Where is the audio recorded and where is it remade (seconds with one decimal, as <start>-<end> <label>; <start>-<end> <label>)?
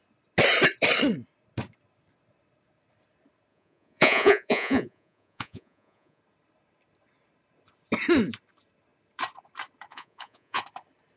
0.0-3.5 recorded; 3.5-6.2 remade; 6.2-9.9 recorded; 9.9-10.6 remade; 10.6-11.2 recorded